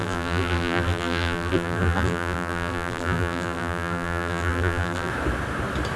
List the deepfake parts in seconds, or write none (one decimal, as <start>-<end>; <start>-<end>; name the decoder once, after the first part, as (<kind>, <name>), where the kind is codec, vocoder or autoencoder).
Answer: 0.0-5.1 (vocoder, BigVGAN v2)